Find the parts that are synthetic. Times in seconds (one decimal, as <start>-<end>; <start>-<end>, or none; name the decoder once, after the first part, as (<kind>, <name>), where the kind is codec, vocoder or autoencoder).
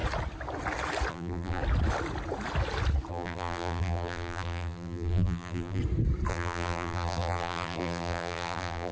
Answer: 1.1-1.6 (vocoder, BigVGAN v2); 3.1-5.8; 6.3-8.9